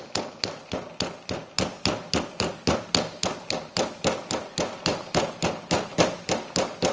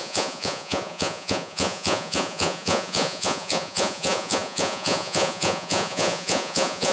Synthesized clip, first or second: second